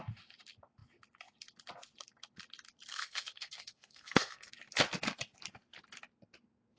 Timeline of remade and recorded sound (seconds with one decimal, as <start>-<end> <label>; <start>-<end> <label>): 0.0-2.9 recorded; 2.9-4.5 remade; 4.5-6.8 recorded